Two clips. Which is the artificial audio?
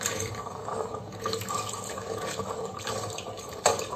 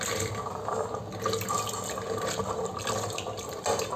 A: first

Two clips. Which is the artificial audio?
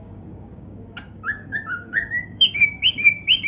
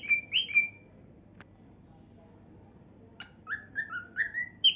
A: first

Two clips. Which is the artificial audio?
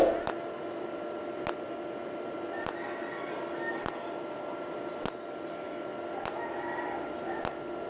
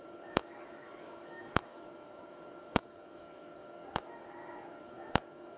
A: second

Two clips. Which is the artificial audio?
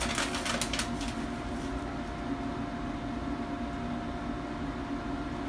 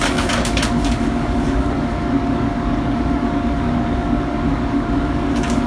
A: second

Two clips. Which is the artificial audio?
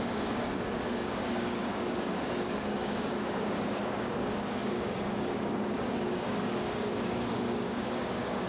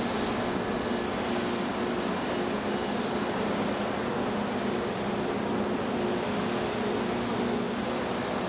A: first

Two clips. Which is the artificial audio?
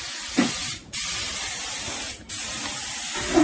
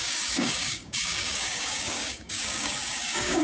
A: second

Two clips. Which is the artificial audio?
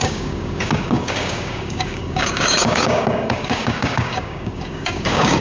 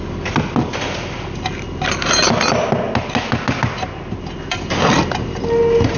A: first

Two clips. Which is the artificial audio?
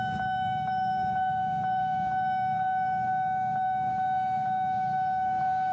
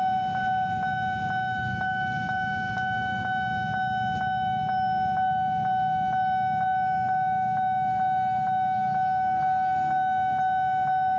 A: first